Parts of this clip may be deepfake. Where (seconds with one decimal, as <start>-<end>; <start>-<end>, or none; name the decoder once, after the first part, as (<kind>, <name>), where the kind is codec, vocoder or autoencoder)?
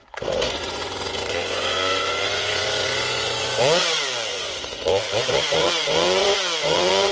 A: 0.0-7.1 (vocoder, Vocos)